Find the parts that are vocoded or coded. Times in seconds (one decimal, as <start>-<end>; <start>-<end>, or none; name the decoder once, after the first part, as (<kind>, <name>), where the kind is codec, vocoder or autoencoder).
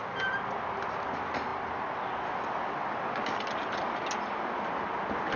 none